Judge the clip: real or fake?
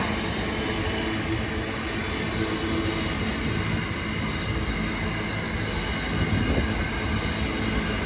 real